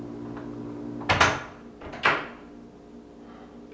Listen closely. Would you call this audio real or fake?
real